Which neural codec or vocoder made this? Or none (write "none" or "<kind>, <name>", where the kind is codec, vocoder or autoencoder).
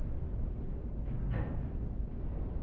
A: none